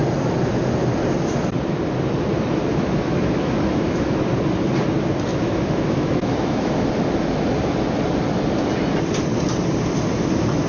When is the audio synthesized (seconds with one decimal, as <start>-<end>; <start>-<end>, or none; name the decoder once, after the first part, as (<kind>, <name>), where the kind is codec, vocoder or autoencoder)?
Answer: 2.7-4.2 (autoencoder, DAC-VAE); 5.3-6.9